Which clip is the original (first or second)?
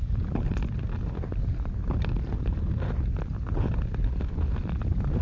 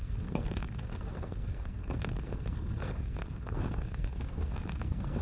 first